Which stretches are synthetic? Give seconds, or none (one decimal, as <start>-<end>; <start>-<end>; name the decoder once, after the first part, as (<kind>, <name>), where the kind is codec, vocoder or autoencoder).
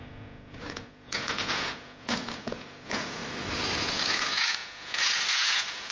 0.0-3.2 (vocoder, Vocos); 3.8-5.9